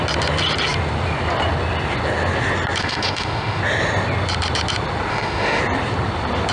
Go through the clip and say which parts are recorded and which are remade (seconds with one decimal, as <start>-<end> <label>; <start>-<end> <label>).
0.0-2.8 recorded; 2.8-3.6 remade; 3.6-5.1 recorded; 5.1-5.6 remade; 5.6-6.5 recorded